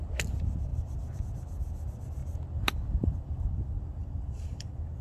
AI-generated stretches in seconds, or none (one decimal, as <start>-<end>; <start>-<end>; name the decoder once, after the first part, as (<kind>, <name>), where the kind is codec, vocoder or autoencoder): 0.7-1.2 (vocoder, BigVGAN v2); 4.0-5.0